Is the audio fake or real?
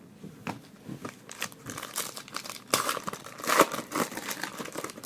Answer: fake